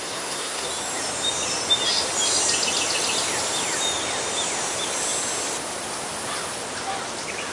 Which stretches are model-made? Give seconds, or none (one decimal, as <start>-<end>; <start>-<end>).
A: 0.0-0.7